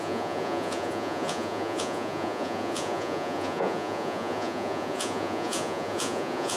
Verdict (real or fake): fake